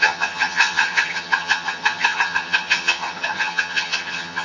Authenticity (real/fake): fake